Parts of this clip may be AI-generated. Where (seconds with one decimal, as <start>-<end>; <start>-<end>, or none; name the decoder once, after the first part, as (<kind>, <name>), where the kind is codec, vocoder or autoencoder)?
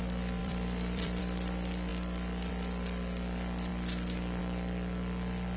0.4-1.2 (vocoder, BigVGAN v2)